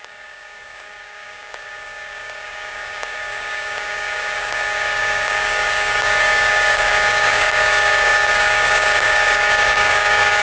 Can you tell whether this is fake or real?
fake